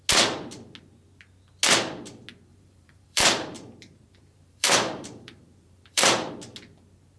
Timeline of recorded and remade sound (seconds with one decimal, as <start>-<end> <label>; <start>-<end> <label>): 0.0-2.5 recorded; 2.5-6.3 remade; 6.3-7.2 recorded